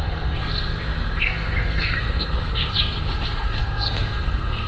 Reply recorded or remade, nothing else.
remade